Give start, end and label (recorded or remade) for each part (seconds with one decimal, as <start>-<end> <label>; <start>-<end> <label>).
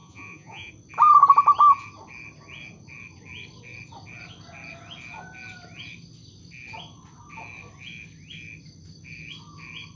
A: 0.0-0.7 remade; 0.7-10.0 recorded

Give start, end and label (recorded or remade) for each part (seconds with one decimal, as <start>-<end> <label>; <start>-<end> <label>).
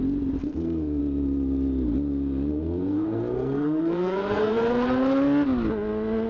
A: 0.0-0.4 recorded; 0.4-1.0 remade; 1.0-2.5 recorded; 2.5-4.5 remade; 4.5-6.3 recorded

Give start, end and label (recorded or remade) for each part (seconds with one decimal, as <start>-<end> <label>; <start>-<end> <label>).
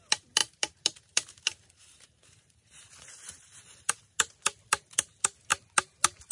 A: 0.0-0.4 recorded; 0.4-4.0 remade; 4.0-6.3 recorded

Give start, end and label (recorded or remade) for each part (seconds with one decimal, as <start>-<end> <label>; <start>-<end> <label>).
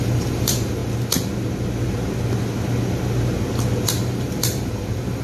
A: 0.0-0.8 remade; 0.8-3.9 recorded; 3.9-5.2 remade